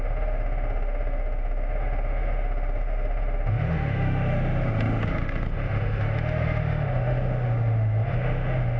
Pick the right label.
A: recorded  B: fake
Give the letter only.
B